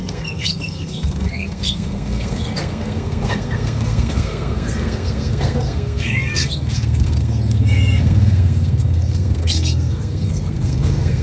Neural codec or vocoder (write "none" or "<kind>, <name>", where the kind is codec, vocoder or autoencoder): codec, SNAC